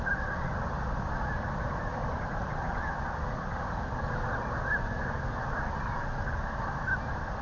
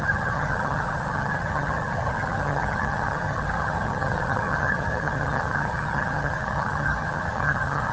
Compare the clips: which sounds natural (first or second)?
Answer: first